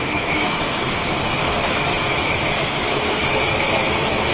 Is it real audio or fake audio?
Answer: fake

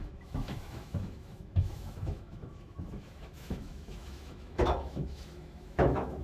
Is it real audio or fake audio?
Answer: fake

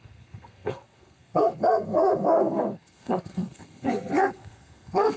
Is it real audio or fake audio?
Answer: fake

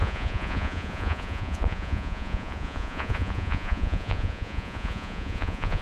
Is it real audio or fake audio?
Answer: fake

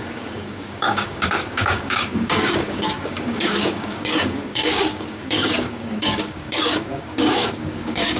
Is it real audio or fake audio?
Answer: fake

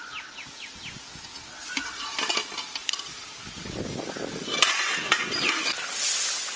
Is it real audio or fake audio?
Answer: real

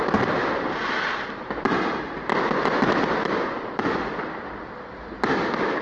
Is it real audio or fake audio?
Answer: real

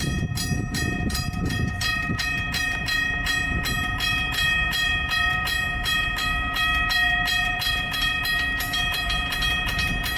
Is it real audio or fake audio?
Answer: fake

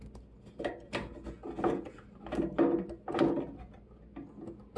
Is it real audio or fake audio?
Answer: real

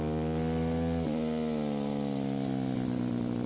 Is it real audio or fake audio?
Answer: real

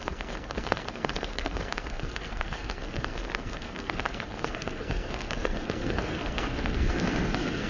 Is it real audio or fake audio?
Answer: fake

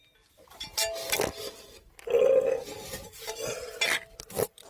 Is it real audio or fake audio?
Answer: real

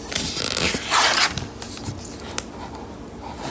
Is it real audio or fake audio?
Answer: real